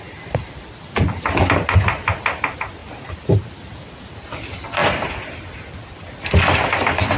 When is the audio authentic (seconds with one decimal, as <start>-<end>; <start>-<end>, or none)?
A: 0.0-7.2